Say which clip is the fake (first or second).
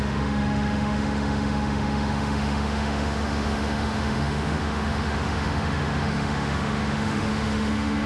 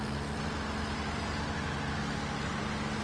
first